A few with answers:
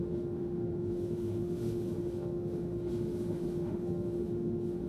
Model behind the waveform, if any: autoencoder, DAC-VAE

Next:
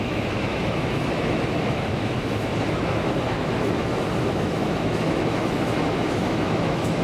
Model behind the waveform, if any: autoencoder, DAC-VAE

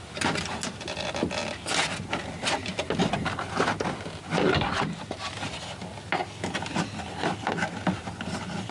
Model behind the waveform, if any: none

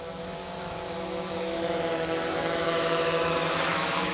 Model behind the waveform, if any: autoencoder, DAC-VAE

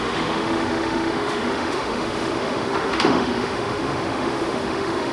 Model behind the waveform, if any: autoencoder, DAC-VAE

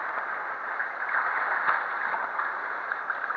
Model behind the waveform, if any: none